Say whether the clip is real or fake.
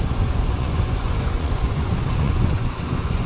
fake